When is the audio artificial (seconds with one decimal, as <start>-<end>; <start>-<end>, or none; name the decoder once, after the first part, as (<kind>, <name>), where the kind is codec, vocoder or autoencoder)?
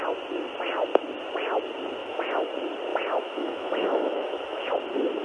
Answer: 2.0-2.5 (autoencoder, DAC-VAE); 2.9-4.7